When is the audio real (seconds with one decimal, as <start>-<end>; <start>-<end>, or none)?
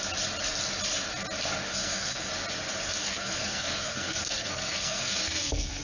0.0-1.7; 2.3-3.0